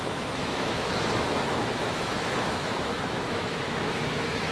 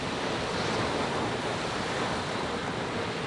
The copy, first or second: first